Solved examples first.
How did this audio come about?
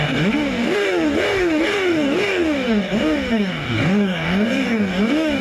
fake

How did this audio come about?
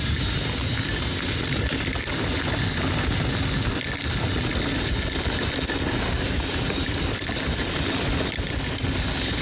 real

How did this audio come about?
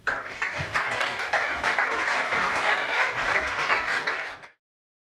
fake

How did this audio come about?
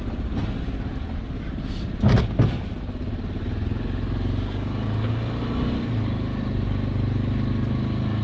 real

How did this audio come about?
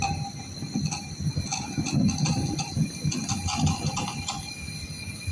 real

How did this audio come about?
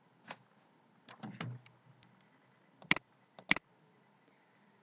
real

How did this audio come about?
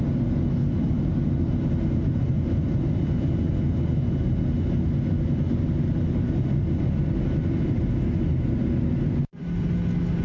real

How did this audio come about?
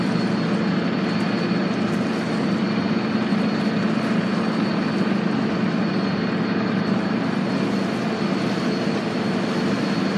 real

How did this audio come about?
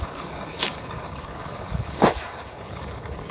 fake